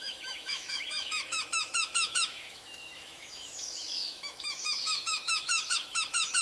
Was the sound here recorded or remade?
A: remade